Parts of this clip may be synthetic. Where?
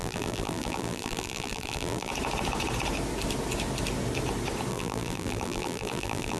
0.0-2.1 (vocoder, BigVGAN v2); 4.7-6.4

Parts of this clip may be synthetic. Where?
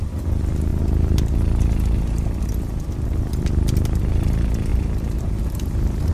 4.7-6.1 (vocoder, BigVGAN v2)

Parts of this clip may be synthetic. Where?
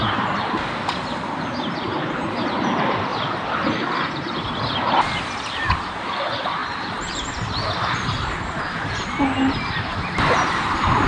0.0-3.1 (vocoder, BigVGAN v2); 5.0-11.1